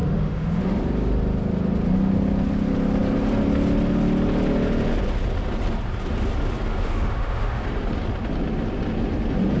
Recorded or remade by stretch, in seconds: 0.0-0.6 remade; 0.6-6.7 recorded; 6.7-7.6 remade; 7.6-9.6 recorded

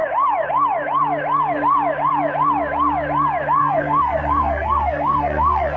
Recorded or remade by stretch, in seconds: 0.0-3.6 recorded; 3.6-5.8 remade

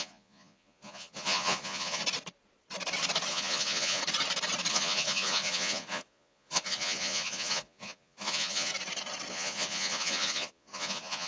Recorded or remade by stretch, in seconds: 0.0-2.0 remade; 2.0-3.3 recorded; 3.3-4.0 remade; 4.0-4.7 recorded; 4.7-8.7 remade; 8.7-9.3 recorded; 9.3-11.3 remade

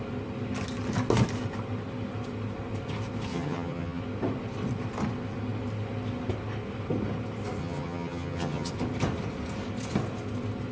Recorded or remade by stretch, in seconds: 0.0-3.3 recorded; 3.3-4.0 remade; 4.0-7.6 recorded; 7.6-8.7 remade; 8.7-10.7 recorded